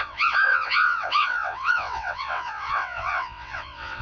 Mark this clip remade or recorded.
remade